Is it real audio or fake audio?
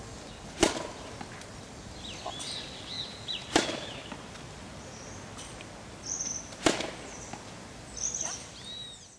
real